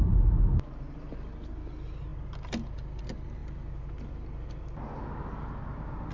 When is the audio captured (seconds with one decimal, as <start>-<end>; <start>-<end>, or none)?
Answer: 0.0-6.1